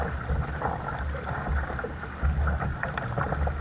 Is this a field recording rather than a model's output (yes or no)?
yes